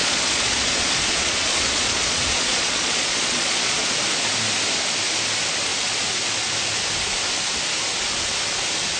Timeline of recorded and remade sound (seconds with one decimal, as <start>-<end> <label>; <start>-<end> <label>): 0.0-3.9 remade; 3.9-9.0 recorded